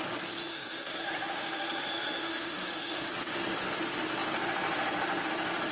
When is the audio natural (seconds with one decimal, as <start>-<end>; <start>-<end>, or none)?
0.0-0.5; 3.1-5.7